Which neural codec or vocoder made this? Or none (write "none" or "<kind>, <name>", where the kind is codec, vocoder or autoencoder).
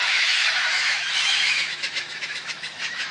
autoencoder, DAC-VAE